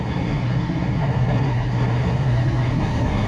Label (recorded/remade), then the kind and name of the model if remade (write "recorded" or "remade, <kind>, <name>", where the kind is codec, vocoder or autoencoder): remade, codec, SNAC